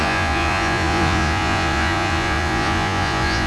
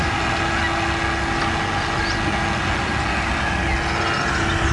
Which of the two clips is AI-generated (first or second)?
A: first